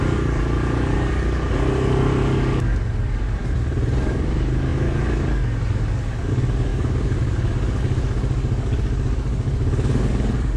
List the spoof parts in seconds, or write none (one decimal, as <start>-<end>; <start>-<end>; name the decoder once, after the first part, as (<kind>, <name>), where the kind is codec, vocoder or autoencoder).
0.0-3.4 (codec, DAC); 4.1-10.6